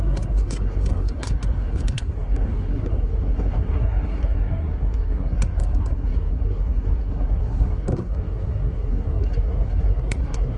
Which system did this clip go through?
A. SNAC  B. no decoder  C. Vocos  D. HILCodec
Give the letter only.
A